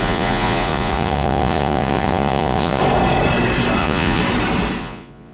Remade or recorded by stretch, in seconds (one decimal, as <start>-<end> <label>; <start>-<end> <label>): 0.0-2.8 remade; 2.8-3.8 recorded; 3.8-4.2 remade; 4.2-4.8 recorded; 4.8-5.3 remade